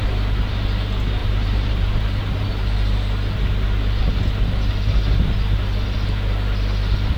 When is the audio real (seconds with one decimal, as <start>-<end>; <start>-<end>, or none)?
0.0-1.2; 2.1-7.2